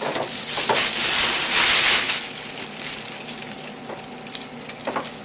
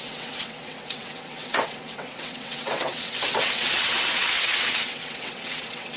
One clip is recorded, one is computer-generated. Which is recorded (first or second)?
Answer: first